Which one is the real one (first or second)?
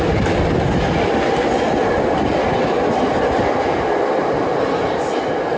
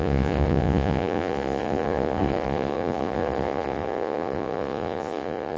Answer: first